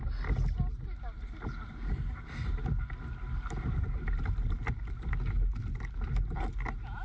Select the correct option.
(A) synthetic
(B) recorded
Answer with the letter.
B